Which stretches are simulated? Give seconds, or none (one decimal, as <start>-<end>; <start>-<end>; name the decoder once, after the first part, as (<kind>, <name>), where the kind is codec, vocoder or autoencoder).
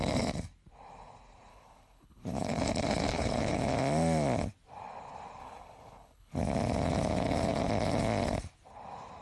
1.5-2.6 (codec, HILCodec); 3.1-3.6; 5.4-6.4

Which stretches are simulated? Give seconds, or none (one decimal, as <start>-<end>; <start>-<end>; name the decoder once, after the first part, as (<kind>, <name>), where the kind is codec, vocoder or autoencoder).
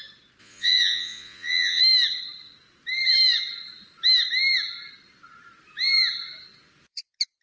0.4-1.8 (vocoder, Vocos)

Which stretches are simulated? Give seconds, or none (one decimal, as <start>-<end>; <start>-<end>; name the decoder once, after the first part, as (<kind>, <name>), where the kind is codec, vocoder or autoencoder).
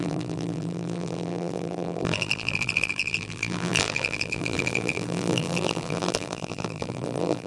0.0-7.5 (vocoder, BigVGAN v2)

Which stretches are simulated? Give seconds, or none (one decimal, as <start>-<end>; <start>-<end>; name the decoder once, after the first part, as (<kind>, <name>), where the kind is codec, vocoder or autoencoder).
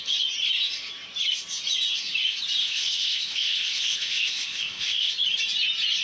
2.6-5.1 (codec, ZipCodec)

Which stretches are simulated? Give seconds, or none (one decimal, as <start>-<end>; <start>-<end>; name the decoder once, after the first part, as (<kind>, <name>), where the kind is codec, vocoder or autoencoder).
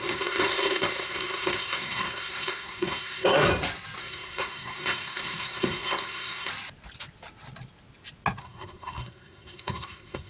0.0-3.5 (codec, SNAC); 4.0-6.5; 8.4-10.3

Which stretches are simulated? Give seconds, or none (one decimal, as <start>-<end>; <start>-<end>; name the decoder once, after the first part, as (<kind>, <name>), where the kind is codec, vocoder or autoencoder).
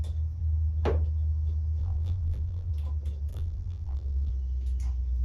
1.8-2.7 (vocoder, BigVGAN v2); 3.3-4.3